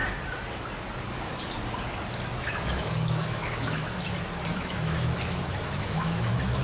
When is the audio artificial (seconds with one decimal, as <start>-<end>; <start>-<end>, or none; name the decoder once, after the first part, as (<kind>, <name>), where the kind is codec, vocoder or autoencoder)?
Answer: 2.3-4.0 (autoencoder, DAC-VAE); 4.5-6.6